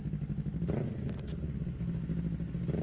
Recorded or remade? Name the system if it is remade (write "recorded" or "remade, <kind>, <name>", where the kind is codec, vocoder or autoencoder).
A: recorded